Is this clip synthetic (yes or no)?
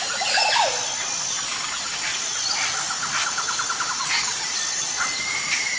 no